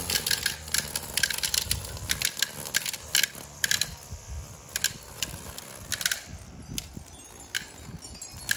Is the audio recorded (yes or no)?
yes